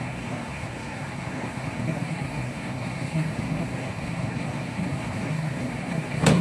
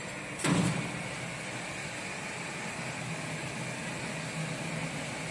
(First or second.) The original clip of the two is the second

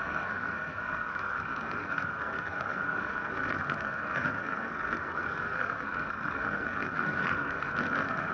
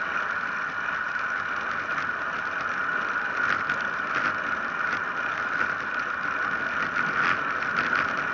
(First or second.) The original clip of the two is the second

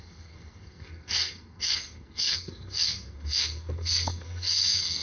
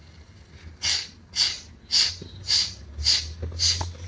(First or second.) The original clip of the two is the second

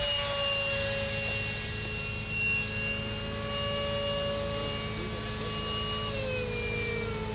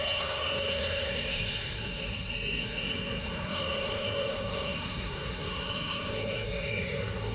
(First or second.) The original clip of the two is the first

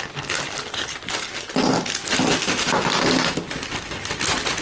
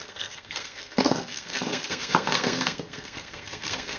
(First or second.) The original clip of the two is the first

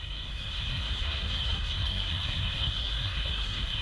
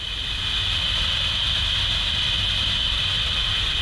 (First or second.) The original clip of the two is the second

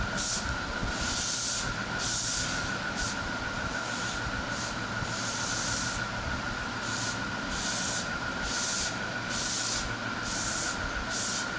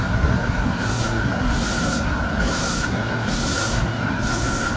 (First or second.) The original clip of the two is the first